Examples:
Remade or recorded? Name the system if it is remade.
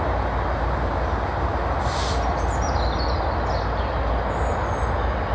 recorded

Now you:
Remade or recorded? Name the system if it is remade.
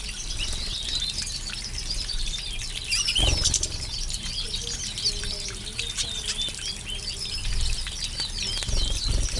recorded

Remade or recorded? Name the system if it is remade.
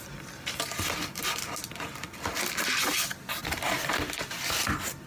recorded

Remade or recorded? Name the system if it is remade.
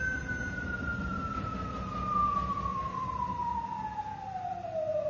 recorded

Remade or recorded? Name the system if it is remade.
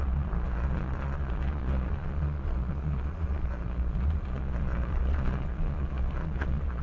remade, vocoder, Vocos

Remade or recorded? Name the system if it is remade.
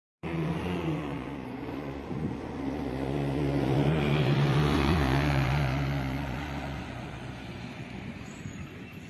remade, vocoder, Vocos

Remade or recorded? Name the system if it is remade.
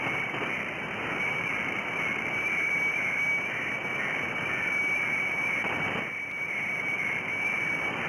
recorded